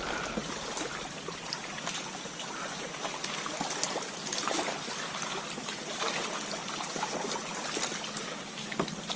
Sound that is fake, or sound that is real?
real